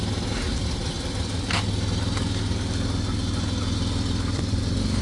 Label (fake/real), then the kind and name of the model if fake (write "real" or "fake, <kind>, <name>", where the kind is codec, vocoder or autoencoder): real